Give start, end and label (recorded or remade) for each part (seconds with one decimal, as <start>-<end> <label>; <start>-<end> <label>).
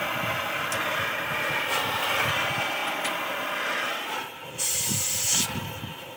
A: 0.0-6.2 recorded